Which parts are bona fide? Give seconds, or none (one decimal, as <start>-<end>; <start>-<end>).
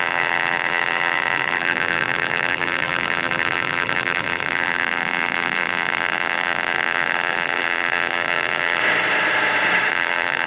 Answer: 8.8-9.9